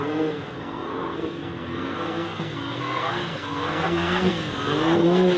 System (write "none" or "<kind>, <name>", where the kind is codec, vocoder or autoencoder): codec, SNAC